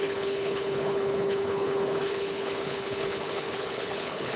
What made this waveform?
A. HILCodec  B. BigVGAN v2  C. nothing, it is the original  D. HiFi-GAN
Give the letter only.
A